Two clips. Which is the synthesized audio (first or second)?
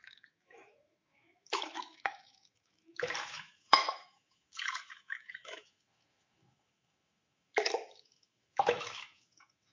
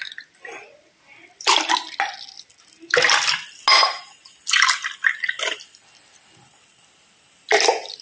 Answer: first